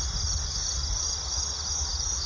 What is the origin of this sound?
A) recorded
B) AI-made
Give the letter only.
A